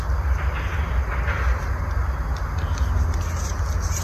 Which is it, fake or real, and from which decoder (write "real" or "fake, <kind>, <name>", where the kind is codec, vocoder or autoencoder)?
real